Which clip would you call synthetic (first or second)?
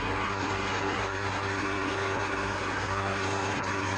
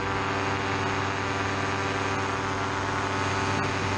first